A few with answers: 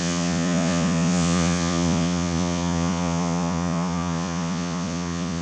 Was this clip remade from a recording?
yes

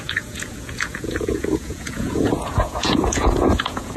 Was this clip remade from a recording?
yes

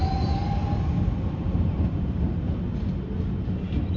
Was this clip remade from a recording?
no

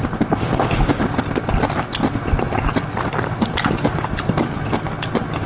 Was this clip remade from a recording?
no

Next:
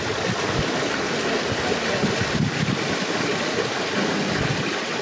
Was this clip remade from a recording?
no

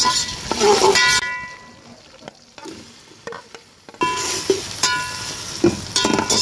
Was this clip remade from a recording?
no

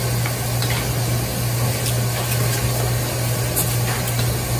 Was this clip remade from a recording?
no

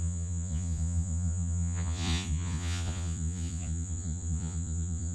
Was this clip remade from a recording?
yes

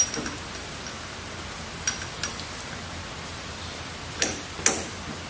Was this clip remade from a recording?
no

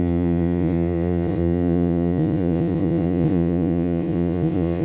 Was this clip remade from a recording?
yes